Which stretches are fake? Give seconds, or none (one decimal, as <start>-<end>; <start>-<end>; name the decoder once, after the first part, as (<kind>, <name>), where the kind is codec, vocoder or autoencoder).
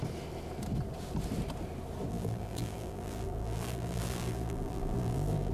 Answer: 2.1-5.5 (vocoder, BigVGAN v2)